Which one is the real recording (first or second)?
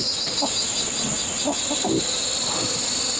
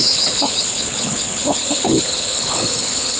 first